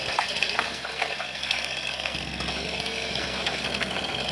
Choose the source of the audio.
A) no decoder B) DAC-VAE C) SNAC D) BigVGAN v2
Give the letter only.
C